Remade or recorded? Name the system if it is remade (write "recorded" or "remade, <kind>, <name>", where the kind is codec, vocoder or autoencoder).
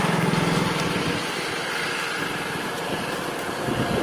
recorded